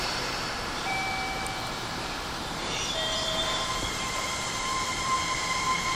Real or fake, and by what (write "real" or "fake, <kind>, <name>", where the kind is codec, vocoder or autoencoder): fake, vocoder, BigVGAN v2